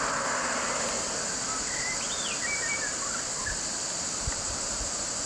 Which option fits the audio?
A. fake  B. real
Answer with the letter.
B